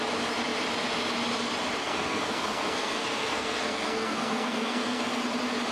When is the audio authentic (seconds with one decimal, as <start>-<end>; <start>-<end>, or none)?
0.0-1.8; 5.2-5.7